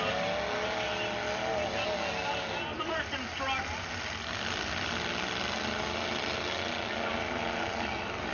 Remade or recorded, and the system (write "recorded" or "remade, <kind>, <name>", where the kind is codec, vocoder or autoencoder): recorded